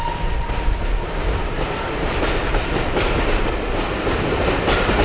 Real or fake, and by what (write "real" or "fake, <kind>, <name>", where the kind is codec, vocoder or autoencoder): real